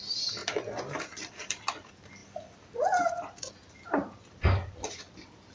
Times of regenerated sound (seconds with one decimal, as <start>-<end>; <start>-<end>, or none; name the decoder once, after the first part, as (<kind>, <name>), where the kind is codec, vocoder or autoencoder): none